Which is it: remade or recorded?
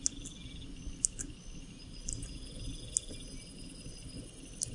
recorded